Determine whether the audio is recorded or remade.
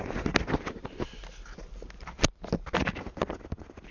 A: recorded